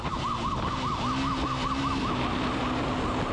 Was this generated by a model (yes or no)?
no